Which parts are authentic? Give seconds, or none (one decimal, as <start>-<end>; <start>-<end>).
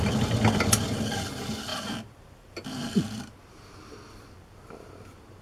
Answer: 0.0-1.7; 4.9-5.4